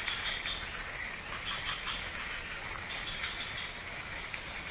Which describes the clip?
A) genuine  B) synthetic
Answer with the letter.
A